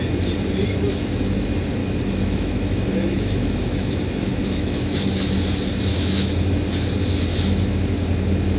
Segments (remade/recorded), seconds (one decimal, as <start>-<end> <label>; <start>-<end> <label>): 0.0-1.8 recorded; 1.8-5.3 remade; 5.3-5.9 recorded; 5.9-6.5 remade; 6.5-8.6 recorded